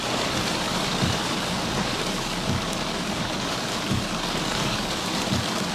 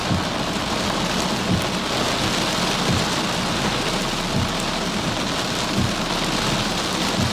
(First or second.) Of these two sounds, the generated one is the first